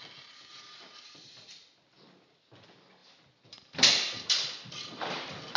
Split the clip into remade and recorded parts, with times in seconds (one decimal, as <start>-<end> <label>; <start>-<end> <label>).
0.0-0.5 recorded; 0.5-1.3 remade; 1.3-3.0 recorded; 3.0-5.6 remade